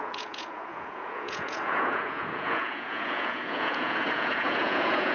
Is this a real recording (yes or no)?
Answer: no